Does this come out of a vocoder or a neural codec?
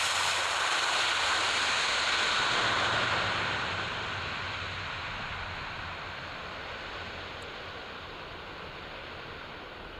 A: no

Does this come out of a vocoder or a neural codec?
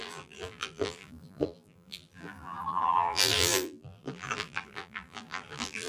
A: yes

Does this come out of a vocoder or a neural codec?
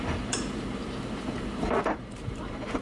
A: yes